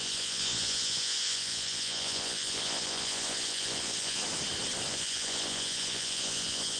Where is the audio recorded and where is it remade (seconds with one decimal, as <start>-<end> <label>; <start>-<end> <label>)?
0.0-4.2 remade; 4.2-4.9 recorded; 4.9-6.8 remade